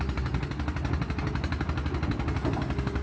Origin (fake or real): real